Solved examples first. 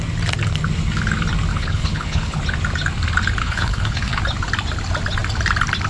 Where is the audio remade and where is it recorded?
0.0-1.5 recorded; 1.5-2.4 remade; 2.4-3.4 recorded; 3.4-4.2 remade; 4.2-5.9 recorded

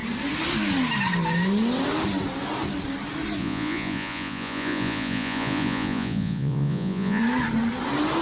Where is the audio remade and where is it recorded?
0.0-3.4 recorded; 3.4-7.2 remade; 7.2-8.2 recorded

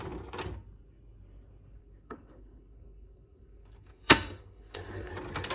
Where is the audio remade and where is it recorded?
0.0-1.8 recorded; 1.8-5.1 remade; 5.1-5.5 recorded